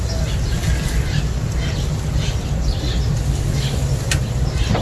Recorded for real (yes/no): yes